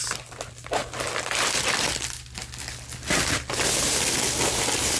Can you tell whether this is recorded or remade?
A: recorded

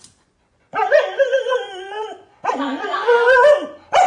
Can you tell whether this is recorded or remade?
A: remade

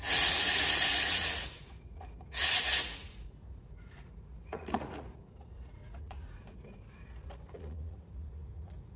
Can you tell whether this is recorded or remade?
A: remade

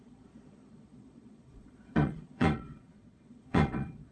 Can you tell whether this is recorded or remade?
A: remade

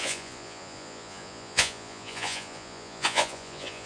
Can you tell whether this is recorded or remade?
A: remade